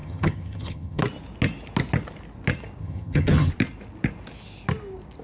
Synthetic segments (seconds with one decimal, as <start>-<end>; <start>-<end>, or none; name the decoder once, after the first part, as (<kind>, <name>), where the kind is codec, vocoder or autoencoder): 0.0-1.0 (vocoder, HiFi-GAN); 2.8-3.5